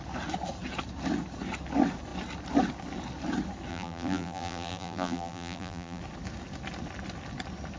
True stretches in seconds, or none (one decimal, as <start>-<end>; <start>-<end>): 0.0-3.7; 6.0-7.8